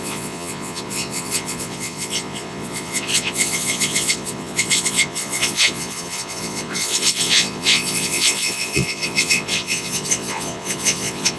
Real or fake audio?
fake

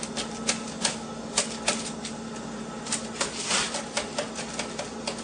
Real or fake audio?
real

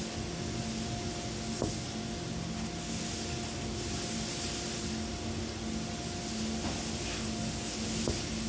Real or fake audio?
real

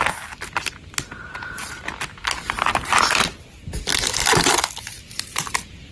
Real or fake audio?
real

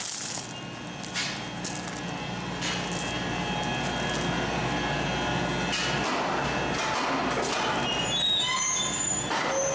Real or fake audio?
real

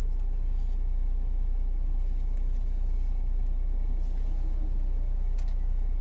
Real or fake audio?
real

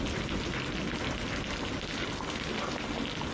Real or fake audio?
real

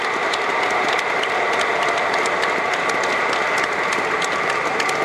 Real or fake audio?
real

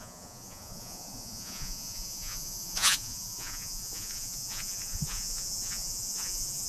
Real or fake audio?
fake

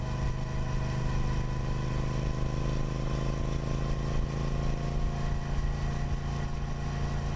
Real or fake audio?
real